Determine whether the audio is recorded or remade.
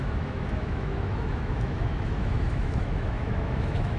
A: remade